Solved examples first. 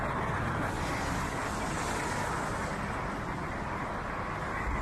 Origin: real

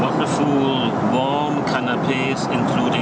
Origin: real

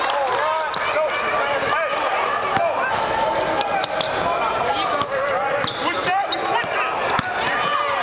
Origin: real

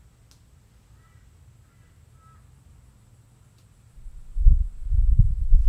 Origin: real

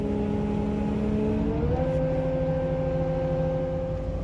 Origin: real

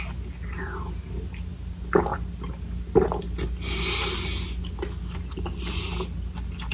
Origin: real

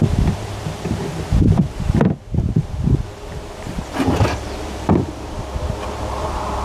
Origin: fake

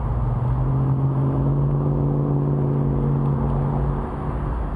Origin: real